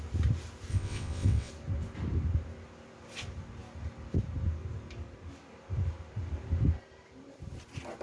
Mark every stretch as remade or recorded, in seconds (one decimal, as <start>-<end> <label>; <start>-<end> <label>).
0.0-0.7 recorded; 0.7-1.5 remade; 1.5-8.0 recorded